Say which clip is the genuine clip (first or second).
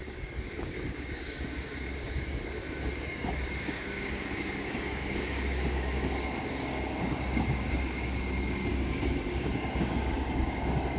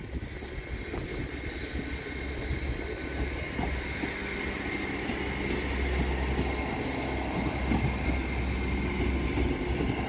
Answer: second